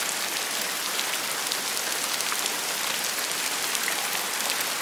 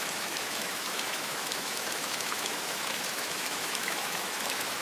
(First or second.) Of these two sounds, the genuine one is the first